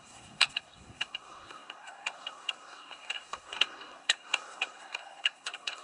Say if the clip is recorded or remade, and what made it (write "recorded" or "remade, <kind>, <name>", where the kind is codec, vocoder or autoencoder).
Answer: remade, codec, SNAC